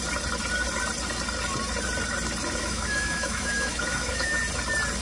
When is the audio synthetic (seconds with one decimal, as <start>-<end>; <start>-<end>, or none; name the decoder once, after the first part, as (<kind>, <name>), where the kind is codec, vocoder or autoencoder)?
2.6-4.4 (autoencoder, DAC-VAE)